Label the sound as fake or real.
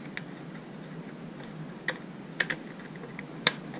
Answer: real